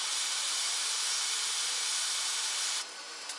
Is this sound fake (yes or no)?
no